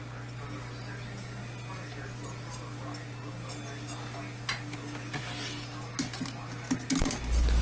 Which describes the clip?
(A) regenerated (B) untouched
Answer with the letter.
B